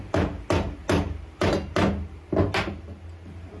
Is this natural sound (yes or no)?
yes